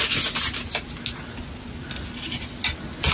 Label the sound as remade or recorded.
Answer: recorded